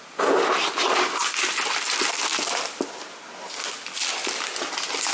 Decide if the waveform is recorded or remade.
recorded